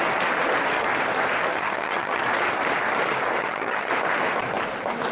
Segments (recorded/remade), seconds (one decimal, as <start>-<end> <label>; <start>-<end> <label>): 0.0-1.5 recorded; 1.5-2.2 remade; 2.2-3.4 recorded; 3.4-3.9 remade; 3.9-5.1 recorded